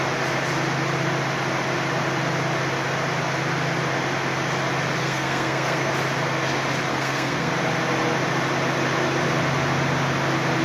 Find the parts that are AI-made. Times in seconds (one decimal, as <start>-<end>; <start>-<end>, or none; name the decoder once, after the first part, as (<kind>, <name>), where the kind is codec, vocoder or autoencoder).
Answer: 5.0-5.9 (codec, SNAC); 6.9-7.5

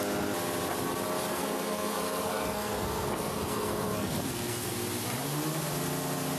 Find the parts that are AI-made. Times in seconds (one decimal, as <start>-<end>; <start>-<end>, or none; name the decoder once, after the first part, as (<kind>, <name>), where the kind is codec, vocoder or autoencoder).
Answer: 1.3-4.7 (codec, SNAC)

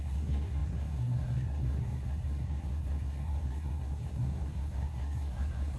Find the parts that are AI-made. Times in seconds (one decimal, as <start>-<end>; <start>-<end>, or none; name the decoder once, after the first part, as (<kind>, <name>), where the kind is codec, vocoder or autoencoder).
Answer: 0.0-5.8 (codec, SNAC)

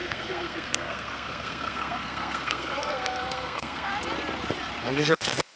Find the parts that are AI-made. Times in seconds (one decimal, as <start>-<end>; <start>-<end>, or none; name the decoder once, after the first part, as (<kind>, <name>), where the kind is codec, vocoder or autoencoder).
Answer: 0.0-3.9 (codec, SNAC); 4.8-5.6

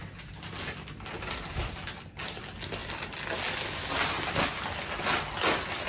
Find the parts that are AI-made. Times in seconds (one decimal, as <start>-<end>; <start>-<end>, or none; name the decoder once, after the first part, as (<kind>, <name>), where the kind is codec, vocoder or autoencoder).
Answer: none

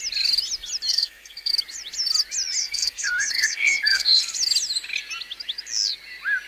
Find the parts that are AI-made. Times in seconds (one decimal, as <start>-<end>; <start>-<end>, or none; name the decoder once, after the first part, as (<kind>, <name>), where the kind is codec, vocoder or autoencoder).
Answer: 0.9-1.5 (codec, SNAC); 2.6-4.2